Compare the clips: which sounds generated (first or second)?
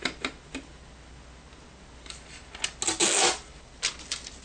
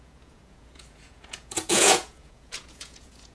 second